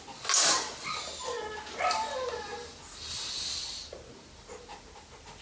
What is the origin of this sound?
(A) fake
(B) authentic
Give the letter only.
B